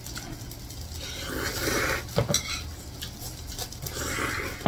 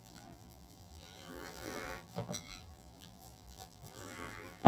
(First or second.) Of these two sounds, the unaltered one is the first